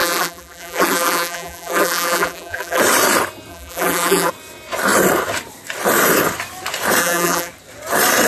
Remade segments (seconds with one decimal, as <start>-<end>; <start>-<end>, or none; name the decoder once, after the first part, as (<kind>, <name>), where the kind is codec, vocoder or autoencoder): 0.0-2.8 (vocoder, BigVGAN v2); 3.5-4.3; 7.0-7.5